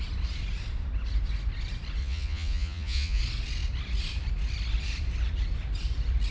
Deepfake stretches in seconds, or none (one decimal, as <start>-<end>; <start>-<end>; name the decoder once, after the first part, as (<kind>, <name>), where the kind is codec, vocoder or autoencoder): 2.0-3.2 (vocoder, Vocos)